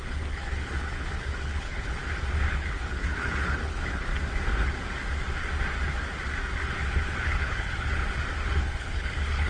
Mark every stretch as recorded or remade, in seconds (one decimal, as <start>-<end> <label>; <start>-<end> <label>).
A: 0.0-2.0 remade; 2.0-2.5 recorded; 2.5-4.1 remade; 4.1-7.2 recorded; 7.2-8.0 remade; 8.0-8.6 recorded; 8.6-9.5 remade